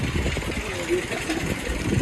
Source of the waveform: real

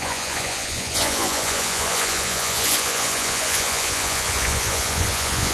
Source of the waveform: fake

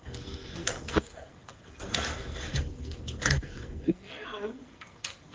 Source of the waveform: fake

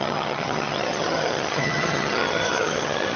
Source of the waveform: fake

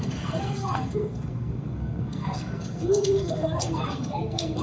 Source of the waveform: fake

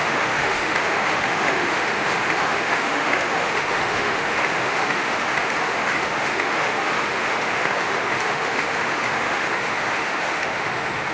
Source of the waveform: fake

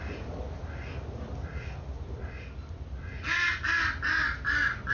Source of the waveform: real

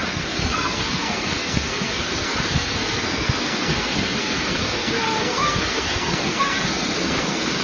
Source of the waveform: fake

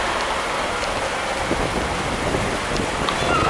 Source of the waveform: real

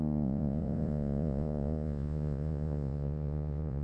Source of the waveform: fake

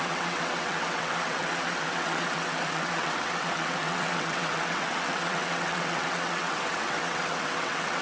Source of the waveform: fake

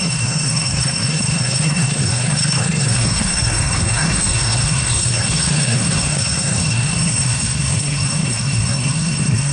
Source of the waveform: fake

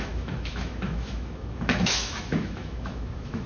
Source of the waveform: fake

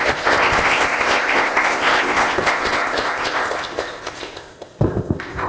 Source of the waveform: fake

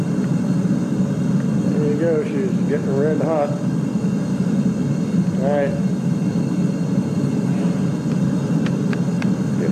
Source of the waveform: real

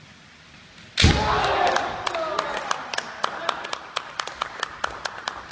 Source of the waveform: real